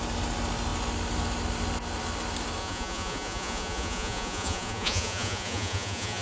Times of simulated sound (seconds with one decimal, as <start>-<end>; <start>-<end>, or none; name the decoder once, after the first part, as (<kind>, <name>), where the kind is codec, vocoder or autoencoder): 2.6-6.2 (vocoder, Vocos)